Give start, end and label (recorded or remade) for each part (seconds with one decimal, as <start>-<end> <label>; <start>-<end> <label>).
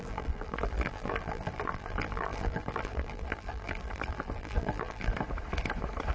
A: 0.0-5.1 remade; 5.1-6.1 recorded